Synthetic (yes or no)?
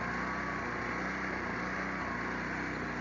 no